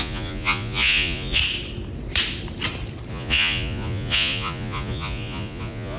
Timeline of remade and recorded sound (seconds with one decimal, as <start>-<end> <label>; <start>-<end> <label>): 0.0-1.4 remade; 1.4-3.1 recorded; 3.1-6.0 remade